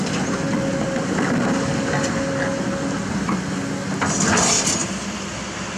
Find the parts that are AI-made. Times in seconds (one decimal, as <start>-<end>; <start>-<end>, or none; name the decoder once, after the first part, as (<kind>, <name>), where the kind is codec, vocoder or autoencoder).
none